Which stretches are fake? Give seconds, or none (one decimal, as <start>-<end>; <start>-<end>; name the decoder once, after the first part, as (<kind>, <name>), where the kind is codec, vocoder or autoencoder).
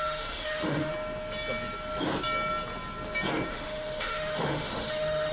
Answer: 0.0-0.9 (autoencoder, DAC-VAE); 3.5-5.3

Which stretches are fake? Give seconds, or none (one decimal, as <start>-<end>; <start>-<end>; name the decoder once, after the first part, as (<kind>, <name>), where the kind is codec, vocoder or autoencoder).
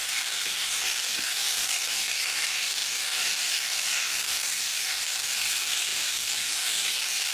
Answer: 0.0-7.3 (codec, DAC)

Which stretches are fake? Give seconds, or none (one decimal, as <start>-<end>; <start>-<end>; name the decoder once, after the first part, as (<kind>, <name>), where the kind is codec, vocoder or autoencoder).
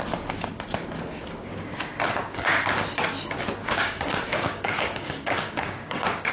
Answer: 1.2-1.8 (codec, DAC); 3.6-6.3